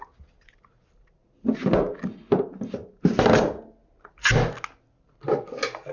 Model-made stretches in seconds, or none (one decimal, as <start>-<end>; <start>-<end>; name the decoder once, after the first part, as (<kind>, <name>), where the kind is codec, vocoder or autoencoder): none